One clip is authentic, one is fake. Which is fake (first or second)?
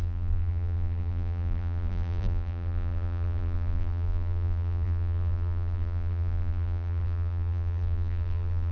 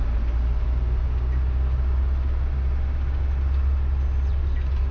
first